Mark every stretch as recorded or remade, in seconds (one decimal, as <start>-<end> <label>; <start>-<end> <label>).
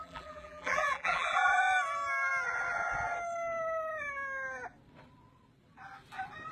0.0-1.6 remade; 1.6-6.5 recorded